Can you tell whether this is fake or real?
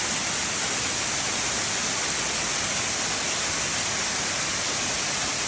real